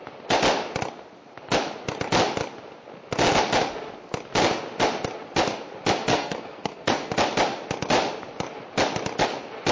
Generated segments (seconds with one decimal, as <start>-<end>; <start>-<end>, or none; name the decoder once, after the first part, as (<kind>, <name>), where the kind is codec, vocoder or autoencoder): 6.1-7.1 (codec, SNAC)